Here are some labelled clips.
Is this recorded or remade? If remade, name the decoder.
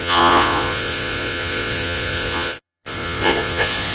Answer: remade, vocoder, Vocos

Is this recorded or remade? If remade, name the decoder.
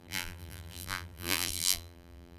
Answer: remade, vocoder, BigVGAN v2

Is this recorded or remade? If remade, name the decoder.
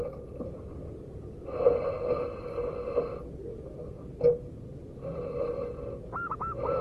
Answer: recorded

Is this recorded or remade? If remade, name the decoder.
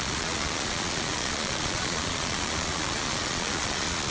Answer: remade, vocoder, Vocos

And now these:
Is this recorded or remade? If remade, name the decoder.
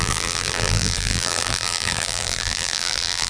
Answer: remade, vocoder, BigVGAN v2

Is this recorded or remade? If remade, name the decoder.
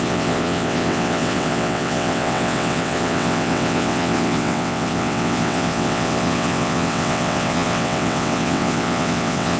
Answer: remade, vocoder, WaveNeXt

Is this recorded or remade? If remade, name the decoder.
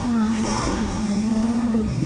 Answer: remade, codec, SNAC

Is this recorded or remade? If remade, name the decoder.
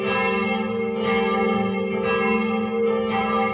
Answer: recorded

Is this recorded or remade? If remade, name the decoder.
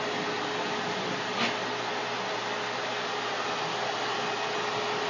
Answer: recorded